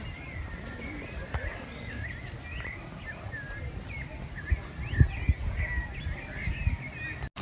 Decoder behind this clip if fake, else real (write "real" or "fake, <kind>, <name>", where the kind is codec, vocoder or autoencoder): real